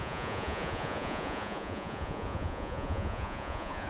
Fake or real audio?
fake